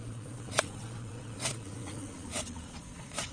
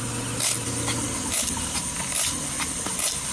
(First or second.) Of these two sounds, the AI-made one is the first